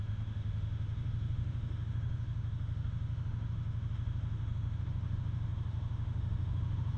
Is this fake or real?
fake